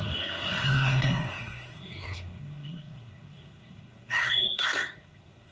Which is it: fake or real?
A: fake